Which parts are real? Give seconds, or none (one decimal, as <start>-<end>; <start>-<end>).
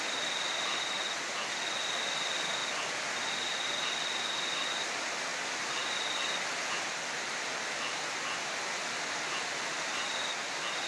0.0-10.9